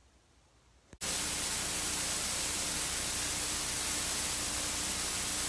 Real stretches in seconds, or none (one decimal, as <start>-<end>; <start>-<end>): 0.0-5.5